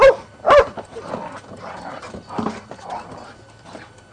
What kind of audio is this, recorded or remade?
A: recorded